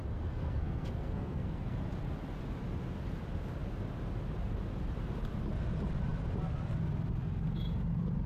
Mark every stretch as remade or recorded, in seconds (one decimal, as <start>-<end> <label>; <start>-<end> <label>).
0.0-1.8 remade; 1.8-8.3 recorded